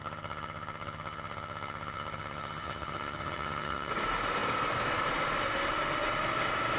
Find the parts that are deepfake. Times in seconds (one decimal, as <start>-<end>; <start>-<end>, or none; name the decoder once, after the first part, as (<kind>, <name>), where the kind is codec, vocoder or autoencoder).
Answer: 0.0-3.9 (vocoder, HiFi-GAN)